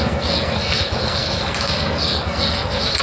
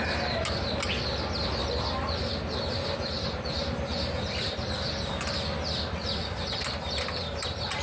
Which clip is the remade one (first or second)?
first